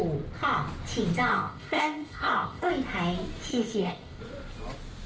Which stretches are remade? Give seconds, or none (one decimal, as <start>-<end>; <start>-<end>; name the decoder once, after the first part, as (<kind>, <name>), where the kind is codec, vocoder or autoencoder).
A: 1.3-2.7 (codec, ZipCodec); 3.5-4.2